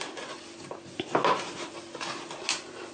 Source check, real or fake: real